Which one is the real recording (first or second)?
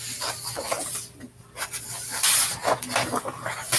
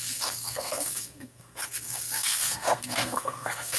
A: first